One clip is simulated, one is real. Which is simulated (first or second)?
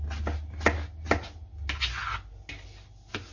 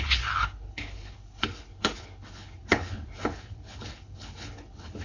second